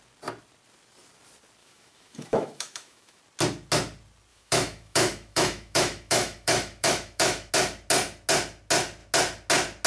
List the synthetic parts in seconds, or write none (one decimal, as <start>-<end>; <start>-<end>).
1.6-3.2; 4.3-7.5